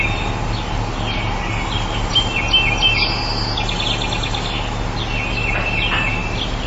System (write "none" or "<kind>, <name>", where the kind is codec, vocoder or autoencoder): none